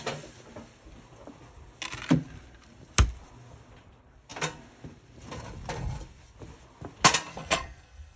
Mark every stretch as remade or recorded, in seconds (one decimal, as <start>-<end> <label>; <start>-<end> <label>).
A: 0.0-7.3 recorded; 7.3-8.2 remade